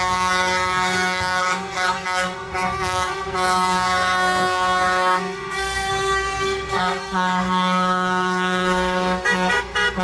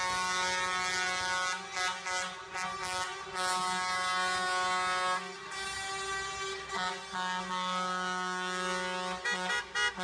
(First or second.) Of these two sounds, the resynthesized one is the first